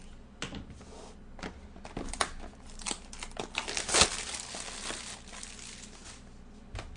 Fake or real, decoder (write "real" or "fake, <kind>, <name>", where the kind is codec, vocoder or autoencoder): real